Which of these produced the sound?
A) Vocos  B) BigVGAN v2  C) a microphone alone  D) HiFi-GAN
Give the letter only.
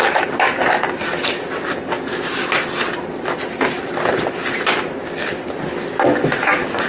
C